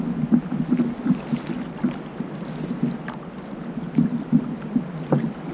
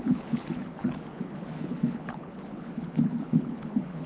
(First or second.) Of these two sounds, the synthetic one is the second